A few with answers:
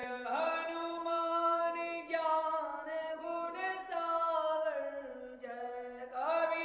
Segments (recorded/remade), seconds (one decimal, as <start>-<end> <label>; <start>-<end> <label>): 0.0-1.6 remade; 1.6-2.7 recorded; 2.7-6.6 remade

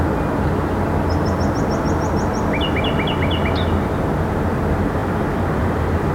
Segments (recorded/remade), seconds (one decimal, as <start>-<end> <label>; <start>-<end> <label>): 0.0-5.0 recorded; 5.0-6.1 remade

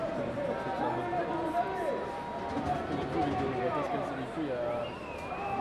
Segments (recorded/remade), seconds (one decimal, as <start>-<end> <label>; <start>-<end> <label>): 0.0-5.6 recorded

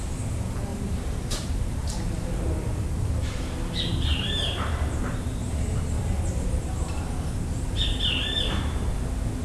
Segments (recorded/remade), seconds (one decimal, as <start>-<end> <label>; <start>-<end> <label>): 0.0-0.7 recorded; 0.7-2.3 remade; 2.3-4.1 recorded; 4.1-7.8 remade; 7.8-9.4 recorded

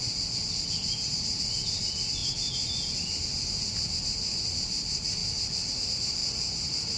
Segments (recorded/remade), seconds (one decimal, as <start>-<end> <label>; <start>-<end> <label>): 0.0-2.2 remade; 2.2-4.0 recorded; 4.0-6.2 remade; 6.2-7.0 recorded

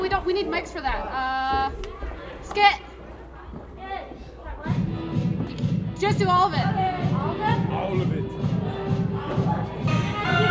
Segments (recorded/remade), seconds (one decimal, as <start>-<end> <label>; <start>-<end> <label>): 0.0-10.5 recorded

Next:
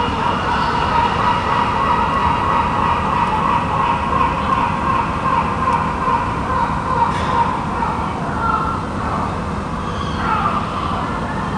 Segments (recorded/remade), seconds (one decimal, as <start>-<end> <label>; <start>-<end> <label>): 0.0-2.2 remade; 2.2-3.1 recorded; 3.1-11.6 remade

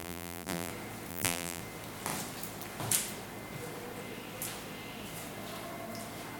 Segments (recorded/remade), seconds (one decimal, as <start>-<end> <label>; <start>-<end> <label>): 0.0-0.7 remade; 0.7-1.1 recorded; 1.1-1.6 remade; 1.6-6.4 recorded